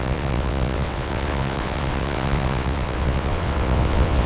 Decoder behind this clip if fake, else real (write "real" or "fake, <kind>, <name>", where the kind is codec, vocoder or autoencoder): fake, vocoder, WaveNeXt